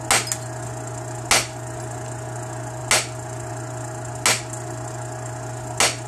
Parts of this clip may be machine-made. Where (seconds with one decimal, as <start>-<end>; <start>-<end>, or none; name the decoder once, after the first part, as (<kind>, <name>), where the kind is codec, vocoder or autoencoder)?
none